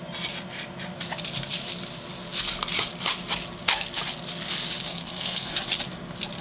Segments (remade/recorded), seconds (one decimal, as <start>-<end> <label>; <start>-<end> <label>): 0.0-4.9 recorded; 4.9-5.5 remade; 5.5-6.4 recorded